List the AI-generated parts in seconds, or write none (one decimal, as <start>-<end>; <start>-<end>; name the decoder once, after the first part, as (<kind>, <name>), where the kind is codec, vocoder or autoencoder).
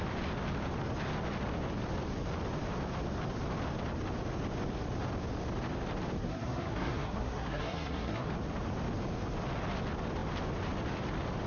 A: 6.2-8.3 (codec, SNAC)